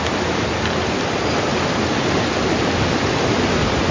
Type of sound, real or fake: real